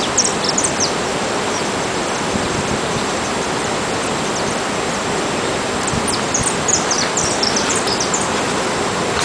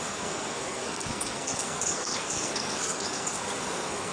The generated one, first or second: second